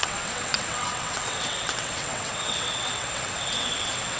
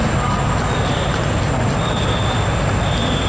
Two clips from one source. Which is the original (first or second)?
second